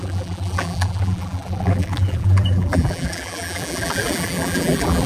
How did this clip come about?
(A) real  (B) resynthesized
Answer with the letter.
B